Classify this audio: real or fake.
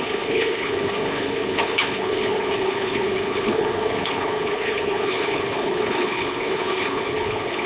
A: fake